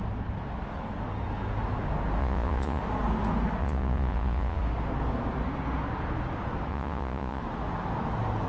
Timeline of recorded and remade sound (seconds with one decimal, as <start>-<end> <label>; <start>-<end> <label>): 0.0-2.2 recorded; 2.2-2.8 remade; 2.8-3.6 recorded; 3.6-4.6 remade; 4.6-6.7 recorded; 6.7-7.4 remade; 7.4-8.5 recorded